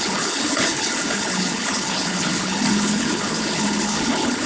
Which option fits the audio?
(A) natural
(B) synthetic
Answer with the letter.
B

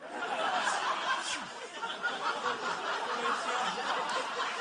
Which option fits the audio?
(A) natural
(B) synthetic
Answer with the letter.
B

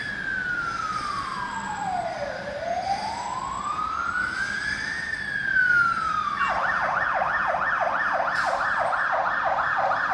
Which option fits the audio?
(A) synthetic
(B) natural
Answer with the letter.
B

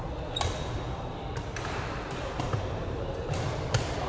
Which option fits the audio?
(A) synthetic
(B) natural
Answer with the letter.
B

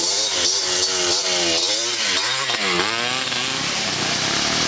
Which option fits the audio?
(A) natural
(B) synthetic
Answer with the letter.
A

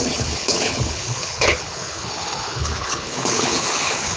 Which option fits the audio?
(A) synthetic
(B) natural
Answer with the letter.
A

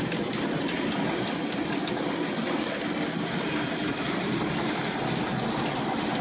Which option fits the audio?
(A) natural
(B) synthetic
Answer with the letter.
A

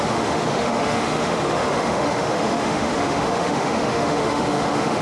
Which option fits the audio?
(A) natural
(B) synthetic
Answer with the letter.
B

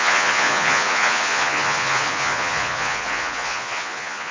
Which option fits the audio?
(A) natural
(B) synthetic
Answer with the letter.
B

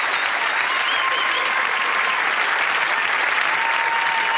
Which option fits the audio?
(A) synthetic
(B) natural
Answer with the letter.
B